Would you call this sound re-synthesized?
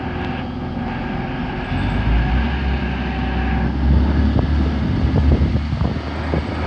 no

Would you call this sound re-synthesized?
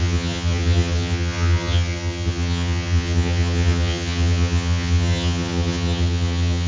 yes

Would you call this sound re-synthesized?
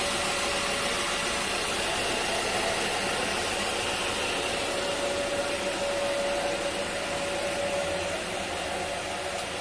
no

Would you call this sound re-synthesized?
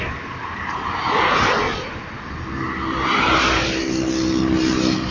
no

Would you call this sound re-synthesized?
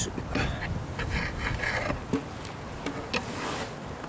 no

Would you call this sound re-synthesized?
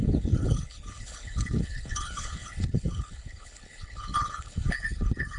yes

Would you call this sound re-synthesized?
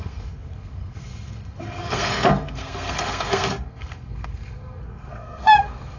yes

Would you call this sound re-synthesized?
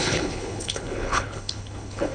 yes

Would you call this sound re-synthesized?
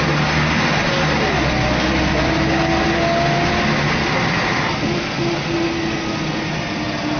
no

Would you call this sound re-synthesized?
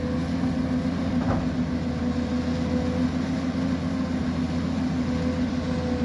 no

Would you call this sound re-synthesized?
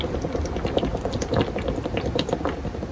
no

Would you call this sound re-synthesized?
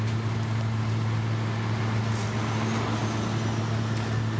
no